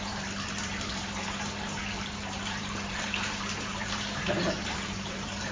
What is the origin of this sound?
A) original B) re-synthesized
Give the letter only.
B